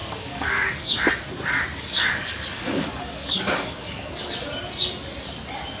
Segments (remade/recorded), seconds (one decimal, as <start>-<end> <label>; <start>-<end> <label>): 0.0-1.1 remade; 1.1-1.7 recorded; 1.7-4.3 remade; 4.3-5.8 recorded